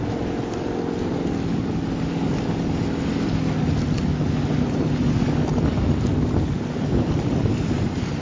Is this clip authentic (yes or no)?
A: yes